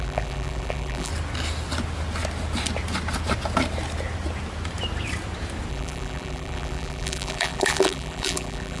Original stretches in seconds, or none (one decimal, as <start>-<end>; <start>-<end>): 1.1-5.7